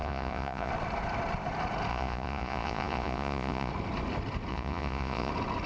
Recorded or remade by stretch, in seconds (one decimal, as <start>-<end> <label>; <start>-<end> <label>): 0.0-0.7 remade; 0.7-1.9 recorded; 1.9-3.7 remade; 3.7-4.5 recorded; 4.5-5.3 remade; 5.3-5.7 recorded